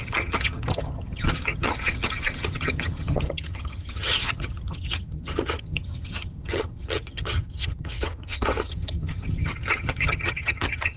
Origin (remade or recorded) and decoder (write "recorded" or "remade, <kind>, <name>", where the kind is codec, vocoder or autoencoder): remade, vocoder, HiFi-GAN